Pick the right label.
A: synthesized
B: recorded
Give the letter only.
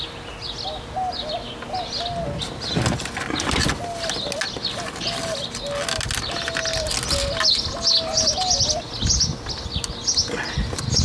B